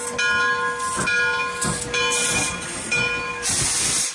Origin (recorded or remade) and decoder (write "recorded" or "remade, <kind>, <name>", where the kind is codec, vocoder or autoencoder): recorded